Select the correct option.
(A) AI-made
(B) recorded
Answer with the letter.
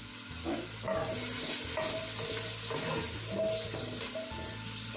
B